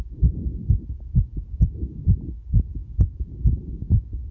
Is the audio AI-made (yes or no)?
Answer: no